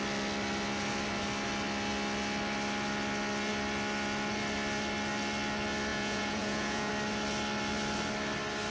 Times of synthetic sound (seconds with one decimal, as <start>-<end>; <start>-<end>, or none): 5.9-6.9